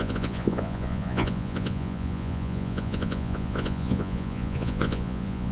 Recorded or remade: remade